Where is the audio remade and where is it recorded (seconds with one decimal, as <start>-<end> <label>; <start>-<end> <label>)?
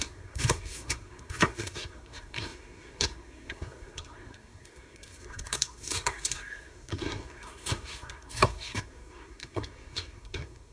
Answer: 0.0-10.7 remade